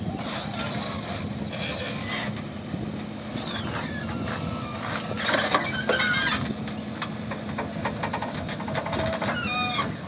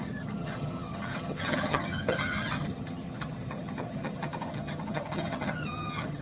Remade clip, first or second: second